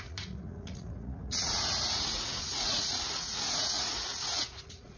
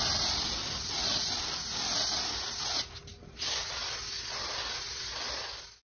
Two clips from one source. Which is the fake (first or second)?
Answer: first